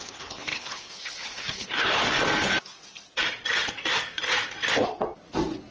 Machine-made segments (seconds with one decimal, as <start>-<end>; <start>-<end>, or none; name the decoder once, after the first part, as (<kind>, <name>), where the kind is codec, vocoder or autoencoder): 0.0-2.0 (codec, HILCodec)